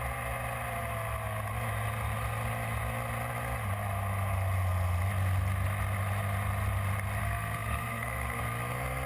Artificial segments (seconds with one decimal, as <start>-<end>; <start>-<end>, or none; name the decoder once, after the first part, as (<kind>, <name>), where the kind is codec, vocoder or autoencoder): 7.2-8.4 (codec, SNAC)